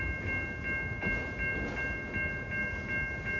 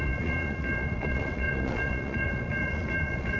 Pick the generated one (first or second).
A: second